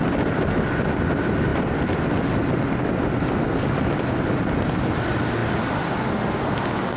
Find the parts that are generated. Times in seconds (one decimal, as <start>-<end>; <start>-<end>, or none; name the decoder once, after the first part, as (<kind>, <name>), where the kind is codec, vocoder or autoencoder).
none